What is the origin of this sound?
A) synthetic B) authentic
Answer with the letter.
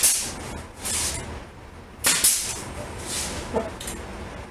B